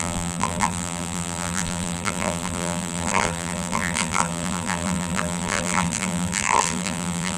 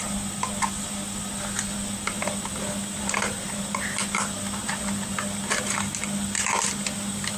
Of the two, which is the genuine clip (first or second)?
second